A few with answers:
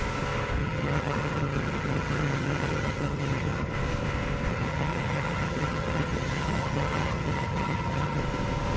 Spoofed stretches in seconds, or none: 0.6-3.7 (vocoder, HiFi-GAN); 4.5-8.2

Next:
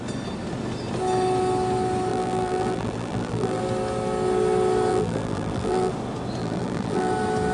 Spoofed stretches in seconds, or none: 2.1-3.6 (vocoder, BigVGAN v2); 4.9-5.9; 6.4-7.1

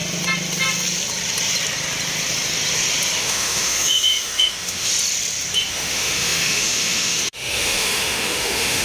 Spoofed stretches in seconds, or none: 3.2-4.9 (autoencoder, DAC-VAE); 5.7-8.8

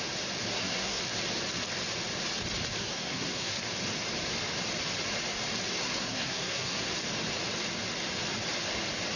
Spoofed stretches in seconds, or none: 0.5-1.0 (codec, SNAC); 2.8-3.6; 5.8-6.9

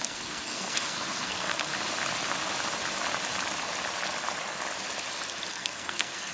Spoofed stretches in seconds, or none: 0.0-1.7 (codec, SNAC); 5.5-6.3

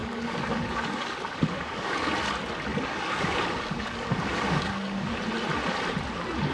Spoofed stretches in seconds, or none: 0.0-2.1 (codec, DAC); 2.7-5.2

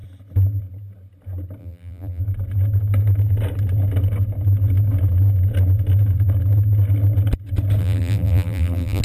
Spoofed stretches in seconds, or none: 1.6-2.2 (vocoder, BigVGAN v2); 7.8-9.0